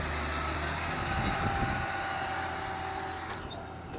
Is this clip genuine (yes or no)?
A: yes